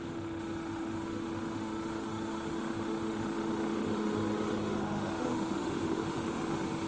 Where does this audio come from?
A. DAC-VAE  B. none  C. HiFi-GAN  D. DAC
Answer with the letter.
A